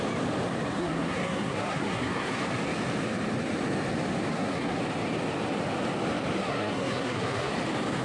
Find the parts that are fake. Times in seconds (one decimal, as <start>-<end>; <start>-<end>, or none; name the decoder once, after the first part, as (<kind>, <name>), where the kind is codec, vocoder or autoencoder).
0.8-2.4 (codec, SNAC); 4.3-4.8; 6.4-7.5